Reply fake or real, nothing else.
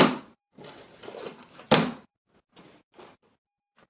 real